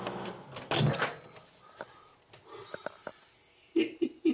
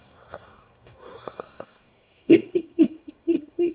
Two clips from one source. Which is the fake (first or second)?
second